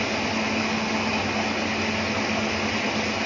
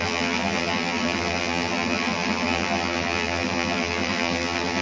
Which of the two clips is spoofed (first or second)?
second